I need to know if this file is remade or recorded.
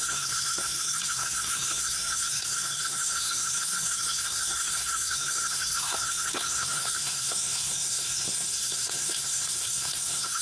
remade